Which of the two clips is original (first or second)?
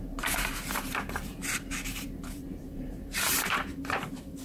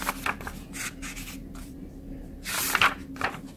second